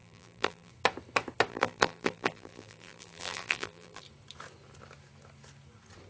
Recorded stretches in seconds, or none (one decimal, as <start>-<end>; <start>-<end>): 0.7-1.5; 4.0-6.1